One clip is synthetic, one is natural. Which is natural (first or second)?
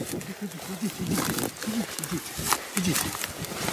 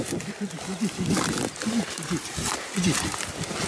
first